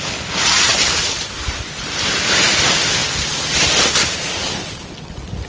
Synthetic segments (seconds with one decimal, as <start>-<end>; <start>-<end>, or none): none